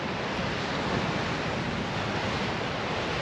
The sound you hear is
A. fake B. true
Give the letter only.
B